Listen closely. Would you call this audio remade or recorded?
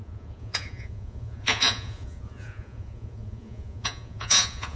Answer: remade